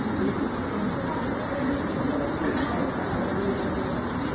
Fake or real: real